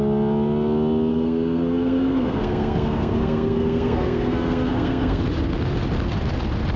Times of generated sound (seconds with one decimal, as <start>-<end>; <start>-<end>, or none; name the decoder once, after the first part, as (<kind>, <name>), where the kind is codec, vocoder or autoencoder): 1.1-5.2 (codec, SNAC)